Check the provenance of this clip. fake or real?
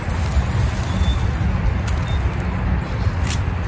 real